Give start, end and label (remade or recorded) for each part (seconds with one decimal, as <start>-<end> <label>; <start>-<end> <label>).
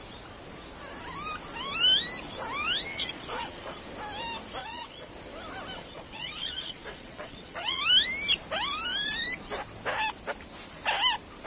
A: 0.0-2.9 recorded; 2.9-3.8 remade; 3.8-4.6 recorded; 4.6-5.1 remade; 5.1-5.7 recorded; 5.7-7.8 remade; 7.8-11.5 recorded